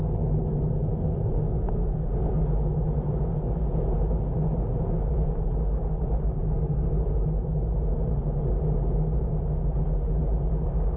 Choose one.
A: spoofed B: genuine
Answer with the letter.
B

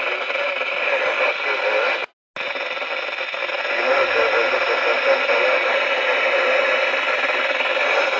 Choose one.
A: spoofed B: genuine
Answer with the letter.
B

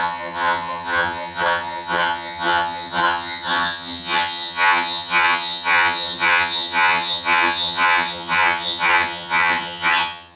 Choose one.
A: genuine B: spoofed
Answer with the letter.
B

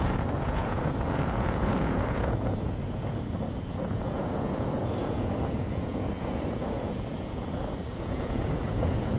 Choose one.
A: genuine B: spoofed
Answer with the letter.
B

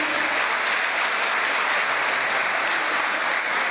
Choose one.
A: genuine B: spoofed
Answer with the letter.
A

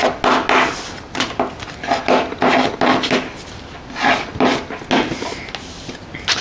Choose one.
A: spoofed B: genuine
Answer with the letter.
B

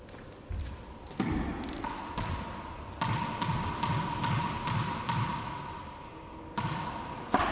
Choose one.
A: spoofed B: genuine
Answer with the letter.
B